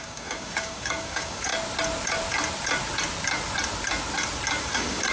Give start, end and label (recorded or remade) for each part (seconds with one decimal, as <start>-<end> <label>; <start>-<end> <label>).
0.0-1.5 remade; 1.5-4.6 recorded; 4.6-5.1 remade